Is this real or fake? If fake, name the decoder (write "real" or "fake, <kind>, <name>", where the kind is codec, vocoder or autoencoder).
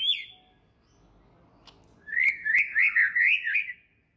real